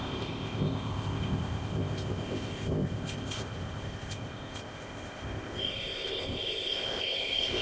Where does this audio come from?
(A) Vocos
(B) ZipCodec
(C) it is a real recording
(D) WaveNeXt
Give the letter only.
B